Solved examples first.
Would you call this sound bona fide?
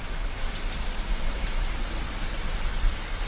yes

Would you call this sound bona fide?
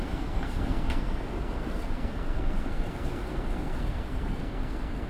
no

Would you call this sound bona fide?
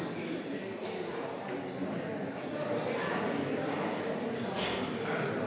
yes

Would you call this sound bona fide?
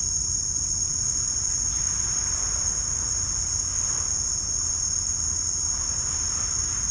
yes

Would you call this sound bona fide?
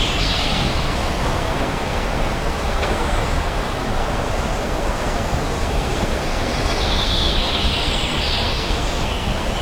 no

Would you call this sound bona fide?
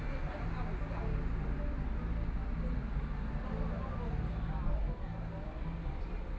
yes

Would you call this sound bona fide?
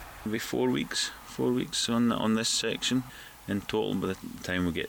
no